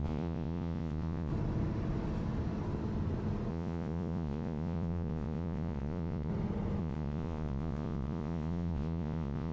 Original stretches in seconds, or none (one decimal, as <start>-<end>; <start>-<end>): 1.3-3.5; 6.3-6.8